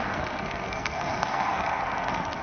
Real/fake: fake